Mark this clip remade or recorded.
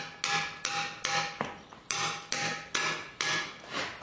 recorded